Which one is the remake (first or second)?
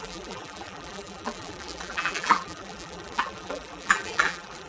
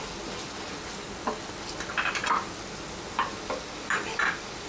first